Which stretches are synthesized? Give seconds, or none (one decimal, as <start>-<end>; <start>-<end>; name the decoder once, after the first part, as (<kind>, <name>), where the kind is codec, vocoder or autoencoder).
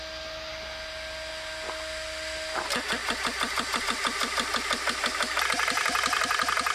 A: none